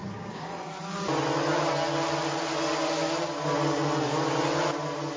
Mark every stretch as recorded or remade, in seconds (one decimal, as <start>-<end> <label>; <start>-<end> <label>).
0.0-0.5 remade; 0.5-5.2 recorded